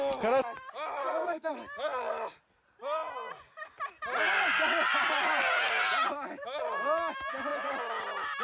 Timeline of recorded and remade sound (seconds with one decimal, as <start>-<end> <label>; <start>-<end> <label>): 0.0-1.0 recorded; 1.0-1.5 remade; 1.5-8.4 recorded